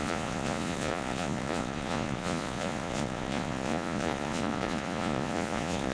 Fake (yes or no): yes